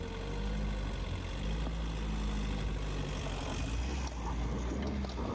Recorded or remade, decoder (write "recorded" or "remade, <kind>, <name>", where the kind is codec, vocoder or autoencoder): recorded